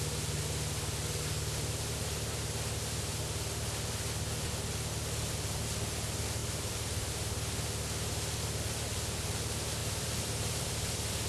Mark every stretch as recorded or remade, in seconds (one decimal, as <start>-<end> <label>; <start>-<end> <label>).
0.0-6.4 recorded; 6.4-7.1 remade; 7.1-9.8 recorded; 9.8-11.3 remade